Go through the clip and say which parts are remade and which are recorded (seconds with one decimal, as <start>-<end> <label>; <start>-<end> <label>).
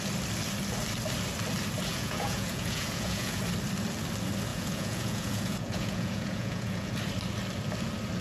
0.0-1.9 recorded; 1.9-3.4 remade; 3.4-4.5 recorded; 4.5-6.9 remade; 6.9-8.2 recorded